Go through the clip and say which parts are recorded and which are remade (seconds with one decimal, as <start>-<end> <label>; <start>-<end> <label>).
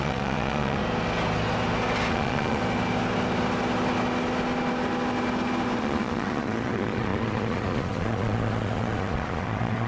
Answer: 0.0-0.8 remade; 0.8-2.1 recorded; 2.1-2.6 remade; 2.6-5.8 recorded; 5.8-9.9 remade